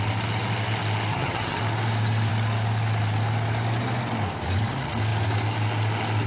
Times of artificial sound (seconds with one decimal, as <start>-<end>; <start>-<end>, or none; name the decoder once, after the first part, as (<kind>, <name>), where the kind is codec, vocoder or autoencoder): 1.1-1.6 (vocoder, HiFi-GAN)